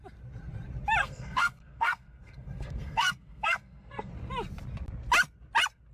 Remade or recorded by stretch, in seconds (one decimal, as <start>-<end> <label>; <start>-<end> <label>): 0.0-1.0 recorded; 1.0-4.1 remade; 4.1-5.9 recorded

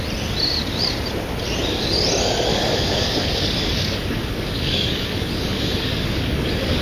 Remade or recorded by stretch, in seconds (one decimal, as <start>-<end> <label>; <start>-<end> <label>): 0.0-2.5 recorded; 2.5-6.8 remade

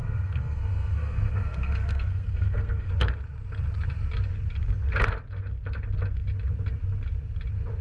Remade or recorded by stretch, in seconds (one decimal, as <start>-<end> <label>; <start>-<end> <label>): 0.0-2.9 remade; 2.9-7.8 recorded

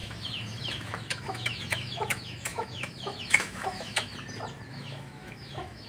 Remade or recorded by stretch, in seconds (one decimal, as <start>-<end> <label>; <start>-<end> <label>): 0.0-4.1 remade; 4.1-4.7 recorded; 4.7-5.9 remade

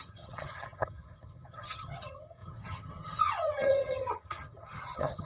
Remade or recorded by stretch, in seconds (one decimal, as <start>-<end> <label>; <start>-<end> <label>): 0.0-5.3 remade

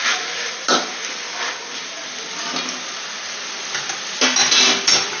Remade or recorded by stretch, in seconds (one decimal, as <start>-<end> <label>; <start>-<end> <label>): 0.0-5.2 recorded